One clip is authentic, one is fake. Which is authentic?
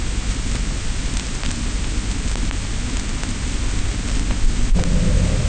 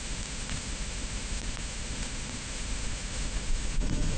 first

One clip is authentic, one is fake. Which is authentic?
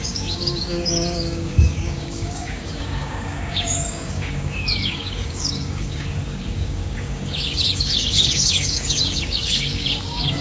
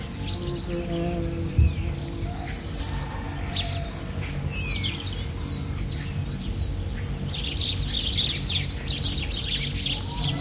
second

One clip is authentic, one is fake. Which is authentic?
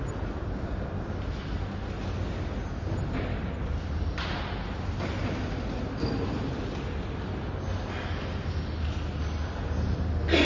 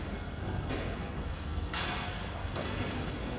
first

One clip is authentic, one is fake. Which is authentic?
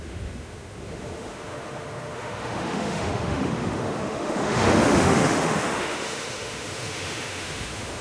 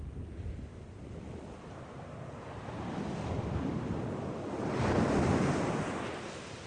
second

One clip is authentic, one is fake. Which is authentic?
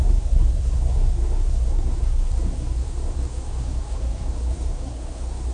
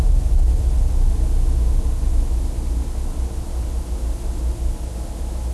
second